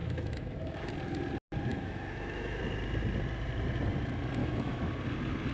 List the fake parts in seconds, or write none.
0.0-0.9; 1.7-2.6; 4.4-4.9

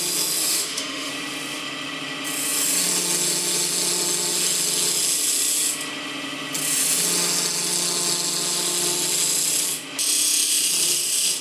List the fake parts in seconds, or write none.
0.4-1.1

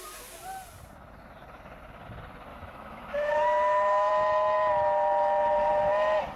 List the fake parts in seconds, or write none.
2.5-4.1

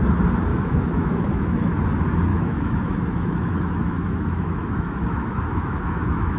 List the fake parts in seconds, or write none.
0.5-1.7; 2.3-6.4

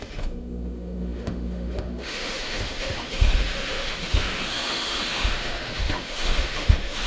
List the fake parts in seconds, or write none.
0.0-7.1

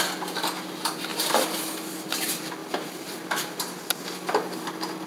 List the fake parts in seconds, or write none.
none

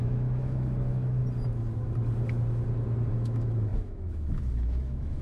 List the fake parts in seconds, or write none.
0.0-1.2; 3.1-5.2